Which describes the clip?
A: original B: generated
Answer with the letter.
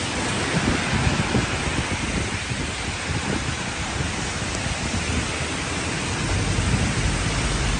A